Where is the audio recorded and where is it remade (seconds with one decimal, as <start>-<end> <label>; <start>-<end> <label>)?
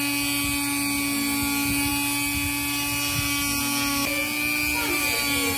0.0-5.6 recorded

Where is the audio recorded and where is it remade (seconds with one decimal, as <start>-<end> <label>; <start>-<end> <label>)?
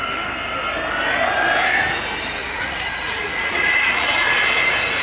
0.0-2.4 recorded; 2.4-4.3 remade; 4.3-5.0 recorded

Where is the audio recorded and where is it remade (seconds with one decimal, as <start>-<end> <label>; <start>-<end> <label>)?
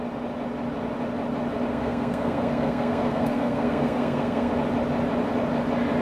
0.0-1.7 recorded; 1.7-4.5 remade; 4.5-6.0 recorded